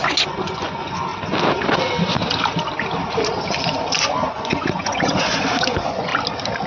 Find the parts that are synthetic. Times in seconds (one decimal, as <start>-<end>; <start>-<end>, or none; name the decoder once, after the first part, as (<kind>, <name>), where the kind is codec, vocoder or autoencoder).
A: 0.0-1.1 (vocoder, Vocos); 4.3-6.1